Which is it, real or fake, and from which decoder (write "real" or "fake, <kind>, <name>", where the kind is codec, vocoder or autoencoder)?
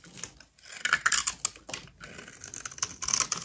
real